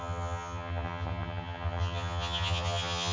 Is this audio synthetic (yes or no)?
yes